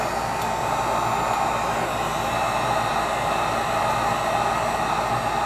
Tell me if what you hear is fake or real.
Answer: real